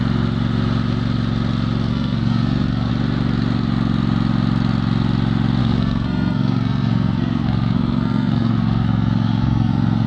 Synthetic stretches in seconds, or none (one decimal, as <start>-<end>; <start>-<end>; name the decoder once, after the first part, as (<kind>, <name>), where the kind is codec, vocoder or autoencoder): 1.9-2.9 (codec, SNAC); 5.6-10.1